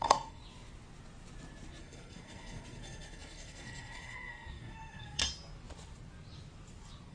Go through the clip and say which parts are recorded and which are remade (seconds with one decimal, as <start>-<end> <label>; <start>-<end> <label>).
0.0-0.4 remade; 0.4-1.8 recorded; 1.8-5.2 remade; 5.2-7.1 recorded